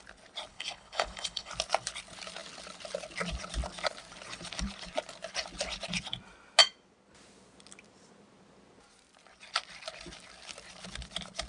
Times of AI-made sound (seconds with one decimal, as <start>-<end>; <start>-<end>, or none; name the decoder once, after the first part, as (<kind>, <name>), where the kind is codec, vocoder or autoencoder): 0.5-1.5 (codec, HILCodec)